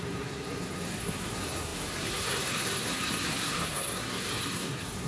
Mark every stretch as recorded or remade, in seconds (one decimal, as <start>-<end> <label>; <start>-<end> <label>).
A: 0.0-5.1 remade